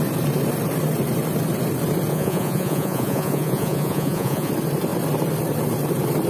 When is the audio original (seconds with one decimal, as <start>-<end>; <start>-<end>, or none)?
0.0-2.1; 4.5-6.3